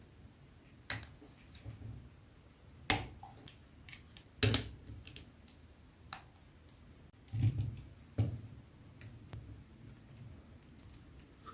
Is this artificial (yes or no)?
no